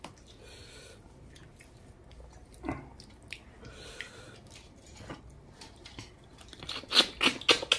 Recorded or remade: recorded